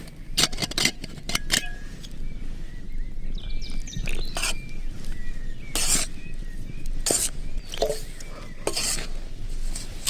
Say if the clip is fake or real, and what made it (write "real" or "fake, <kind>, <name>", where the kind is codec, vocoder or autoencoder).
real